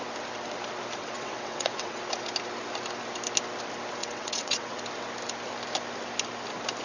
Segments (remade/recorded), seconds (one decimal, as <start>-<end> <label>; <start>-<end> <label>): 0.0-1.0 recorded; 1.0-2.0 remade; 2.0-4.0 recorded; 4.0-4.7 remade; 4.7-6.8 recorded